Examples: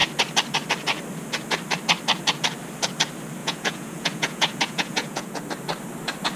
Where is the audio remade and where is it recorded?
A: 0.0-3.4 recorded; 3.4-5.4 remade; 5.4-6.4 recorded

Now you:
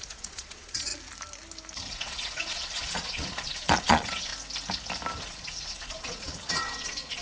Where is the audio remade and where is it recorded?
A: 0.0-0.9 remade; 0.9-1.9 recorded; 1.9-4.3 remade; 4.3-5.2 recorded; 5.2-7.2 remade